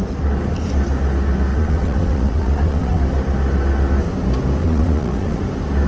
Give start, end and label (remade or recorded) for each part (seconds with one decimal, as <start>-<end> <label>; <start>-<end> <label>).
0.0-1.5 recorded; 1.5-3.0 remade; 3.0-4.6 recorded; 4.6-5.4 remade; 5.4-5.9 recorded